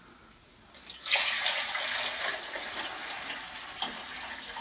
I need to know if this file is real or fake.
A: real